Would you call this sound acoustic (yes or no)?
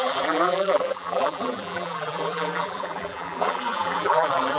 no